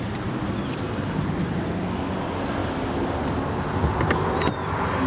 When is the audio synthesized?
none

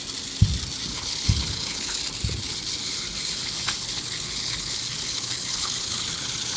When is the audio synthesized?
0.9-2.0 (codec, HILCodec); 2.4-6.6